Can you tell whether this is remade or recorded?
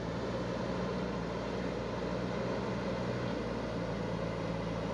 recorded